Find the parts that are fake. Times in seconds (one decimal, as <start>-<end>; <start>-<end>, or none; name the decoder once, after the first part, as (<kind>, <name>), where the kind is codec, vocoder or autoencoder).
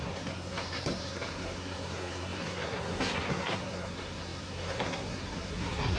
0.0-6.0 (codec, SNAC)